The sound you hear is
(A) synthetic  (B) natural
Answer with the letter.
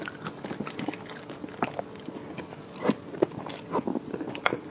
B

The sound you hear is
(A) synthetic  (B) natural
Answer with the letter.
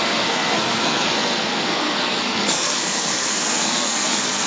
A